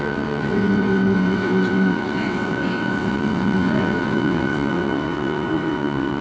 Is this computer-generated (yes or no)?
yes